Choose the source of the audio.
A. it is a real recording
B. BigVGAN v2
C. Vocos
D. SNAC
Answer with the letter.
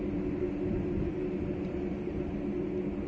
A